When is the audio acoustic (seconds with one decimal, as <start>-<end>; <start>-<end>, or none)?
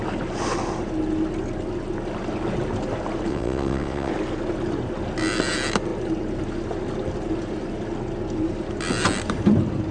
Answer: 0.0-3.3; 4.1-9.9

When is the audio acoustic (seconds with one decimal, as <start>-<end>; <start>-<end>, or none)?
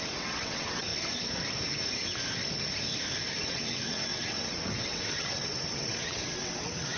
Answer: 0.9-3.4